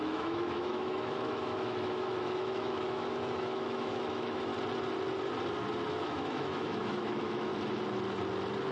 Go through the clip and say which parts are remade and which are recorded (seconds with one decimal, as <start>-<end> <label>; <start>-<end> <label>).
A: 0.0-4.5 remade; 4.5-5.9 recorded; 5.9-7.5 remade; 7.5-8.7 recorded